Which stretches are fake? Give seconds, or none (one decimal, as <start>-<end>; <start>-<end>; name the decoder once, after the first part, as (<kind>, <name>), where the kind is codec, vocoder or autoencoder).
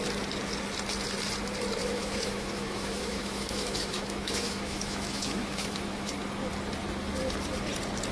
1.8-6.1 (autoencoder, DAC-VAE)